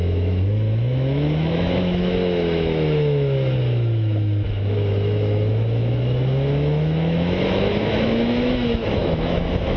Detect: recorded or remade remade